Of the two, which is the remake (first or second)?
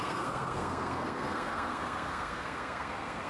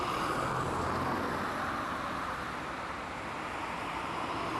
first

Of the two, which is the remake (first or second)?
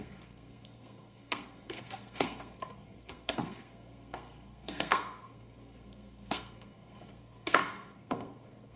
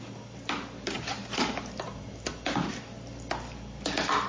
first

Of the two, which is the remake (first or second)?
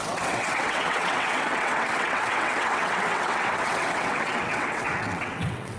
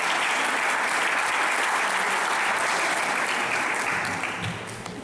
first